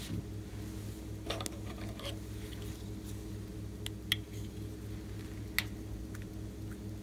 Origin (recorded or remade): recorded